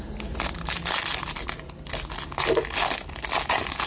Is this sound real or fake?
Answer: real